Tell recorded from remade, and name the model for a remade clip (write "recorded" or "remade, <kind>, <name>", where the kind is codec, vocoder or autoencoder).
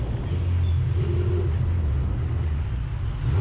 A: recorded